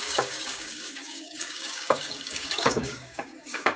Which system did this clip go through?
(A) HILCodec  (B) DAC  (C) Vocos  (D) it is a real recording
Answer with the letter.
B